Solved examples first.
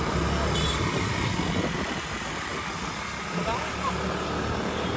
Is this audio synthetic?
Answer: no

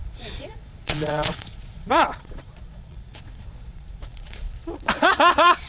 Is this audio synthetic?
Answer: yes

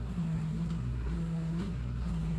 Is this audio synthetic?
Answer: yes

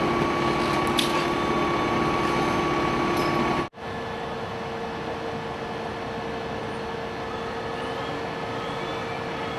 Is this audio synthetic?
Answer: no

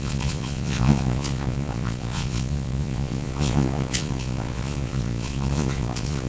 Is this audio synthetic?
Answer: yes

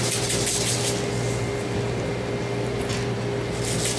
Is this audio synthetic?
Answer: no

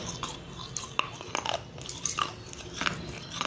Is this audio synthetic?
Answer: no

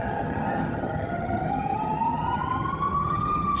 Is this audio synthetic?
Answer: yes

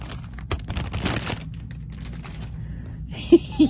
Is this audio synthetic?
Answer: no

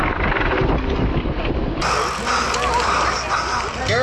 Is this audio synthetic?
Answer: no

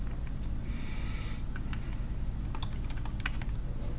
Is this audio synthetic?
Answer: no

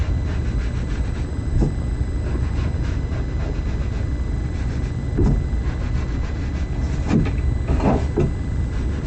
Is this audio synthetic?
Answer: no